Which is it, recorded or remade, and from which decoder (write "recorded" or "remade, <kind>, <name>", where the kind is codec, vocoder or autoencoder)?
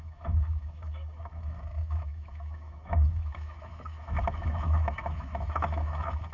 remade, autoencoder, DAC-VAE